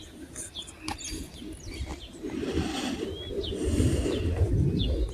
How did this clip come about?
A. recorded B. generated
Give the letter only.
A